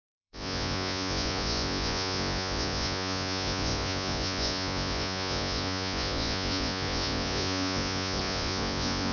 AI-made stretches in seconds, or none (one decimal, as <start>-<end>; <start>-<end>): 0.0-9.1